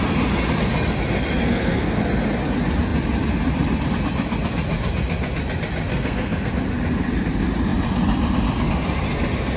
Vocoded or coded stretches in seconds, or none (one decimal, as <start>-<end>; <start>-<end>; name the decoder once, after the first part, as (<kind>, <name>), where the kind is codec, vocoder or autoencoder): 1.4-2.0 (codec, SNAC); 5.9-6.5